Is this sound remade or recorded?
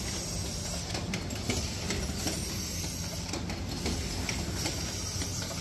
recorded